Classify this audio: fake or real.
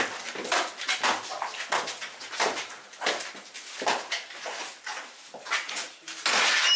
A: real